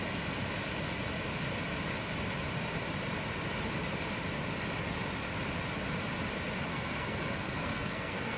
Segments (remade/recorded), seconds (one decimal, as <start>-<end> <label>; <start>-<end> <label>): 0.0-6.7 recorded; 6.7-8.4 remade